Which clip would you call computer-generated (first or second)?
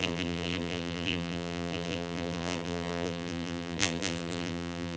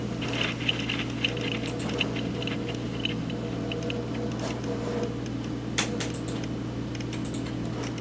first